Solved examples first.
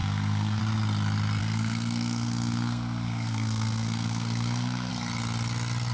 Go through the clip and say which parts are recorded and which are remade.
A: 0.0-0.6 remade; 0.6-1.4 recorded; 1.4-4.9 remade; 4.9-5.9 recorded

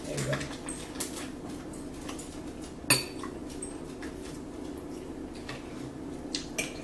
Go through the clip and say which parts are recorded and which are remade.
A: 0.0-6.8 recorded

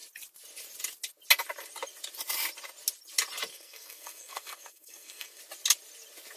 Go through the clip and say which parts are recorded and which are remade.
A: 0.0-3.5 recorded; 3.5-5.4 remade; 5.4-6.4 recorded